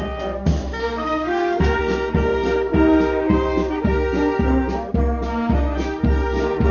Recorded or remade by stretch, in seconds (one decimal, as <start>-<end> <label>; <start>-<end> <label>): 0.0-0.8 recorded; 0.8-1.8 remade; 1.8-6.7 recorded